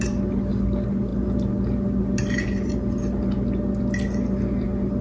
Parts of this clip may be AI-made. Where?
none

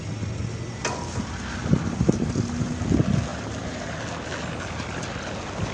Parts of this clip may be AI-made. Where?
none

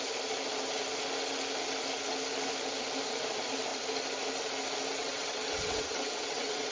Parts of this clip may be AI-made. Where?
5.0-6.7 (vocoder, WaveNeXt)

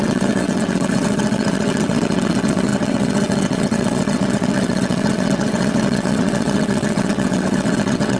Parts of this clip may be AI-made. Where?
0.0-8.2 (vocoder, WaveNeXt)

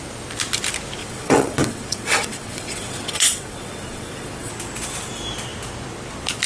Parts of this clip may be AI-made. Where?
1.0-4.5 (vocoder, WaveNeXt)